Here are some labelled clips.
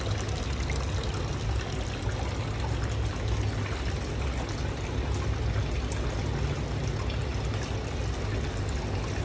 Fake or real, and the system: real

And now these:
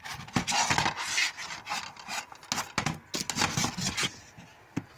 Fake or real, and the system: real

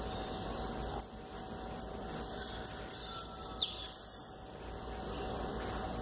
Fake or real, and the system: real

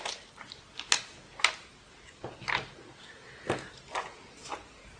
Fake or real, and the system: real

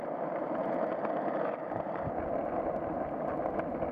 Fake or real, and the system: real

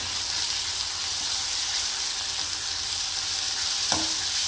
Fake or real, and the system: real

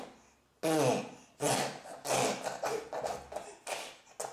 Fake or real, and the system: real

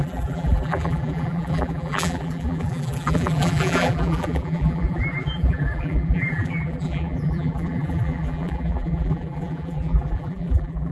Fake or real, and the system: fake, vocoder, BigVGAN v2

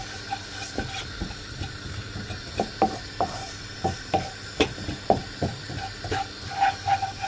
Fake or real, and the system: fake, vocoder, BigVGAN v2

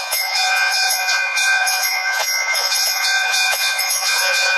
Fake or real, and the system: fake, vocoder, Vocos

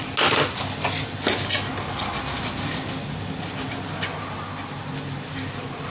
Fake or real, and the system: real